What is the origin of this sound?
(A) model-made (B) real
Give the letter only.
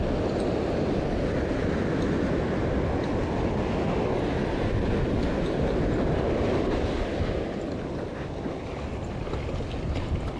B